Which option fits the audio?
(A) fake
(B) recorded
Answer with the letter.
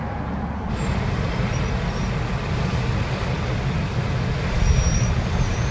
B